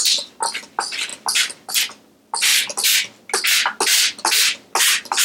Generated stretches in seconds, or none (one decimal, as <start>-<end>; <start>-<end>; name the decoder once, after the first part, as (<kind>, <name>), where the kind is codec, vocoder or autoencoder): none